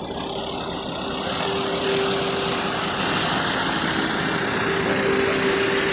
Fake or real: real